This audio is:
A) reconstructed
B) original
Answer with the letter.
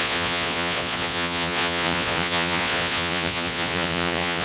A